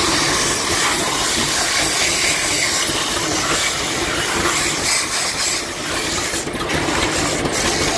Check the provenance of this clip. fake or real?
real